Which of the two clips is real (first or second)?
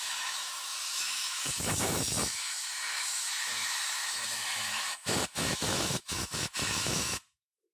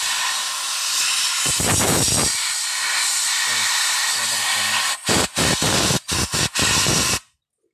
second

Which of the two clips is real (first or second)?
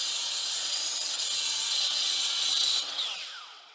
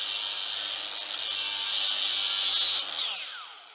second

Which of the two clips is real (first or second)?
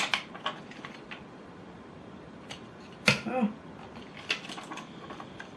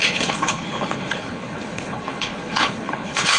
first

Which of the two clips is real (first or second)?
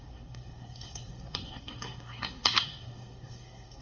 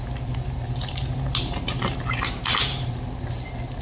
second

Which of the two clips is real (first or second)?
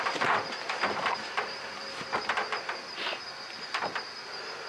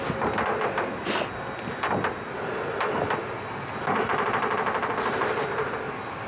second